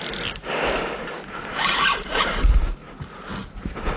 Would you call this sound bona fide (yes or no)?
yes